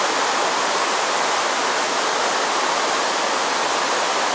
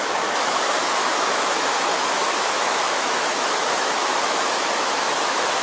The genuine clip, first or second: first